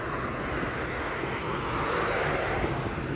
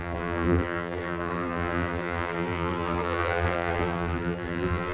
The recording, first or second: first